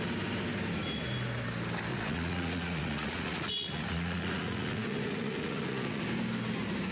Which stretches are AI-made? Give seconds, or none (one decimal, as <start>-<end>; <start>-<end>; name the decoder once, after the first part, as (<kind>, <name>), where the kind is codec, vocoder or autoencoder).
1.9-6.0 (vocoder, Vocos)